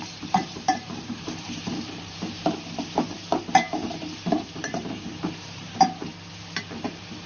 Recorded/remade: remade